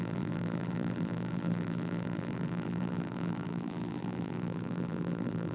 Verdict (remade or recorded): remade